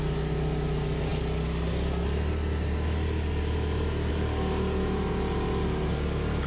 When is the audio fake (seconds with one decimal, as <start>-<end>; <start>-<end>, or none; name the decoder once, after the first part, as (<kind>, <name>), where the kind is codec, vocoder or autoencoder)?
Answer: none